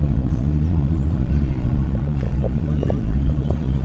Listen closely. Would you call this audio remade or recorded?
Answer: remade